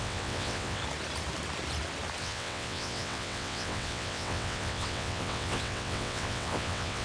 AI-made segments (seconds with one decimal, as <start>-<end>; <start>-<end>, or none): 0.0-0.8; 2.2-7.0